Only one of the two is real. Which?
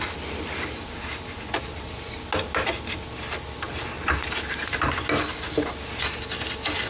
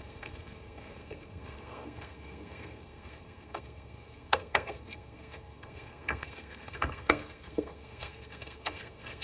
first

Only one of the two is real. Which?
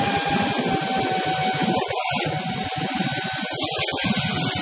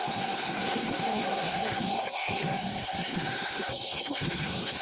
first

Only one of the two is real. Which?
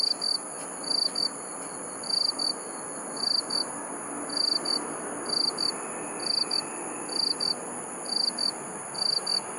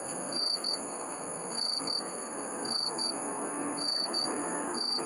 first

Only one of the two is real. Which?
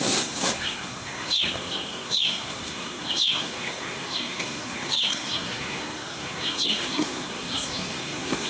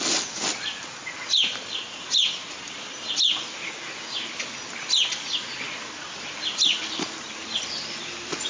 second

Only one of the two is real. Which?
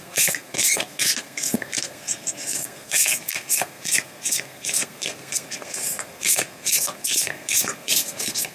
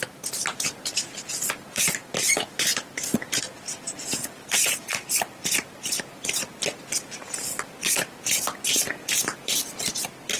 second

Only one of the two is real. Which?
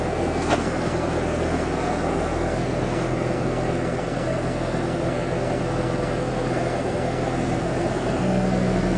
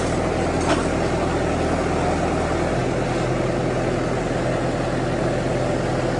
second